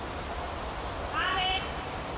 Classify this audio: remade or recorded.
recorded